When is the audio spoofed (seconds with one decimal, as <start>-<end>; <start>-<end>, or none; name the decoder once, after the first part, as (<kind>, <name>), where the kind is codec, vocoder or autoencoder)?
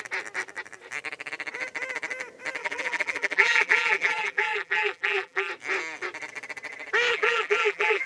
2.6-5.5 (vocoder, BigVGAN v2); 7.1-8.1